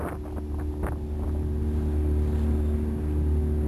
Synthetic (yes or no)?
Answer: no